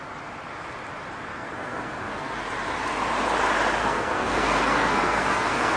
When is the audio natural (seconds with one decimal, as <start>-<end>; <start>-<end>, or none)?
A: 0.0-1.3; 2.3-3.8